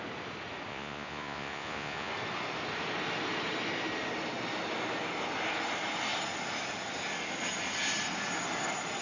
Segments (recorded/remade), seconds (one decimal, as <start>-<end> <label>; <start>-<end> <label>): 0.0-0.7 recorded; 0.7-2.1 remade; 2.1-9.0 recorded